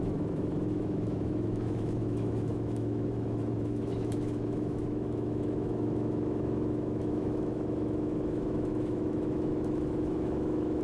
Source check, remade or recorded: remade